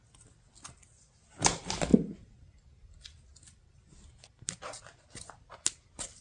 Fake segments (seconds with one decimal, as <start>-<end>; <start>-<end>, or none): none